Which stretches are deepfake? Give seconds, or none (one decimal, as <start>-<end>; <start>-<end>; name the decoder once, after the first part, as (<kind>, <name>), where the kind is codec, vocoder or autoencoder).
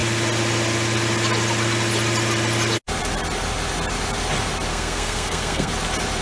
4.7-5.7 (codec, SNAC)